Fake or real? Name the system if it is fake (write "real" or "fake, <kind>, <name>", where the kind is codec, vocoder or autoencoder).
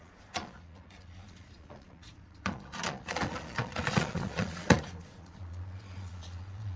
fake, vocoder, Vocos